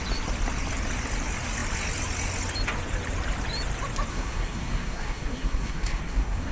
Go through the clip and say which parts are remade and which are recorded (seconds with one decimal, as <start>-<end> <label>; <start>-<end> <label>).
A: 0.0-4.1 recorded; 4.1-6.5 remade